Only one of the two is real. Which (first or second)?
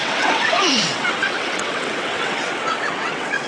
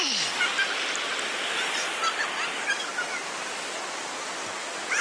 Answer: second